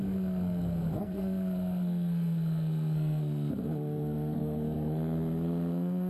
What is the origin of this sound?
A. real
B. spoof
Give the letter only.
B